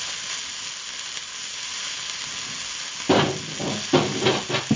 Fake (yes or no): no